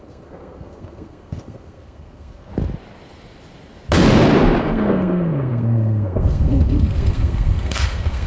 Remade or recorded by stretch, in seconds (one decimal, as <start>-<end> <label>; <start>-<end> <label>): 0.0-2.5 remade; 2.5-4.6 recorded; 4.6-8.3 remade

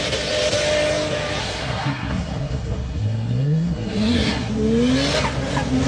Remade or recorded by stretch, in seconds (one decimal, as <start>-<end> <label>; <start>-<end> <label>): 0.0-1.4 recorded; 1.4-4.5 remade; 4.5-5.9 recorded

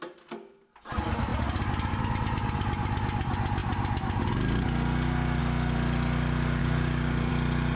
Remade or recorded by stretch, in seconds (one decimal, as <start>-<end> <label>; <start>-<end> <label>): 0.0-6.6 recorded; 6.6-7.3 remade; 7.3-7.8 recorded

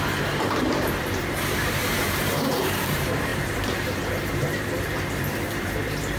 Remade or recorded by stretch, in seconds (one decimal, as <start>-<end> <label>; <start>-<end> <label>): 0.0-6.2 remade